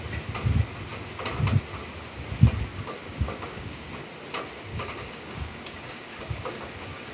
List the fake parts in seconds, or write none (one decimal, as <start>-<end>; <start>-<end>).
2.7-3.9; 4.7-7.1